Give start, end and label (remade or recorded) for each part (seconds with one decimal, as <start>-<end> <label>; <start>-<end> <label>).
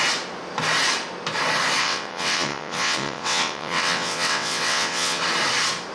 0.0-1.8 recorded; 1.8-5.2 remade; 5.2-5.9 recorded